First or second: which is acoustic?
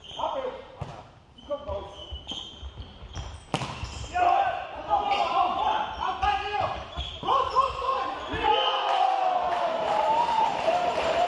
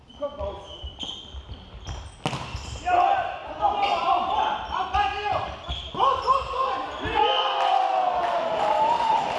second